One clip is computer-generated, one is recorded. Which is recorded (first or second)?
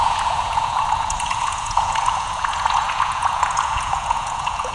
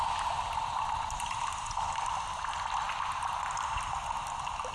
second